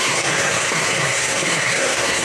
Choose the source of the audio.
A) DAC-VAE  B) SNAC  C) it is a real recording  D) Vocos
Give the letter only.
B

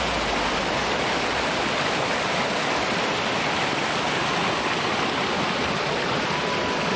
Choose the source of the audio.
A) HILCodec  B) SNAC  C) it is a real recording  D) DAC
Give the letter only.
C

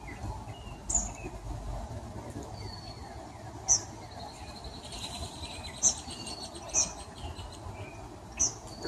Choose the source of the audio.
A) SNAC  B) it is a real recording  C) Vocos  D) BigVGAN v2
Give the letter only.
B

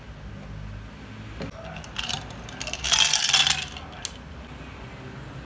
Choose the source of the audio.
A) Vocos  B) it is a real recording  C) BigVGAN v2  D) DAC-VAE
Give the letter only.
B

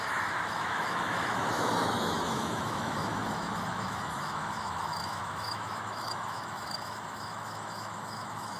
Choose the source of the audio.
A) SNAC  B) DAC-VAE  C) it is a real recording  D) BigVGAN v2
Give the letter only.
B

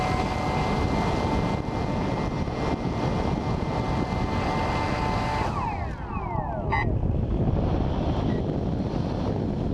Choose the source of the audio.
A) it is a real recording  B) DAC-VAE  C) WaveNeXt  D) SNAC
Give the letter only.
A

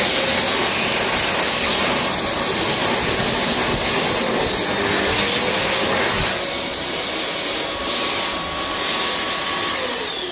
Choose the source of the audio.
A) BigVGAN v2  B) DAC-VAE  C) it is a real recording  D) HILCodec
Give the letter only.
C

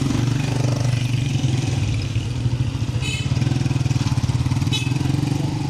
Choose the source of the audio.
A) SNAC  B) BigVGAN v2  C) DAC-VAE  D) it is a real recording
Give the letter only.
D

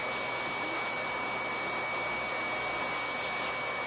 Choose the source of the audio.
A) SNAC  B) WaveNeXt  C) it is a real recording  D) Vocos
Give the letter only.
C